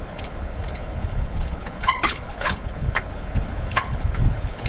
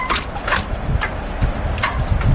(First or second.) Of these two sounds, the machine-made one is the first